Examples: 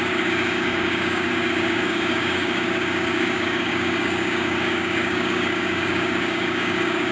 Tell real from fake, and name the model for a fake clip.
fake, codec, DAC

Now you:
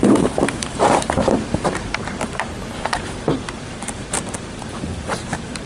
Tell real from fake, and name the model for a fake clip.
fake, vocoder, BigVGAN v2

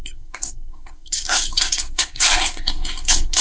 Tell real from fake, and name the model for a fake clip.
fake, codec, SNAC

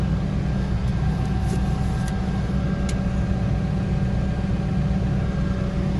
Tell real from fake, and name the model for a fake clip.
real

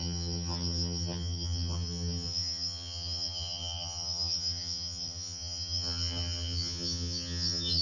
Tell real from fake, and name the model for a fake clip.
fake, vocoder, HiFi-GAN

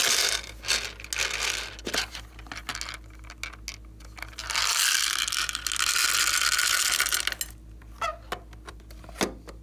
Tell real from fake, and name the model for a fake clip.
real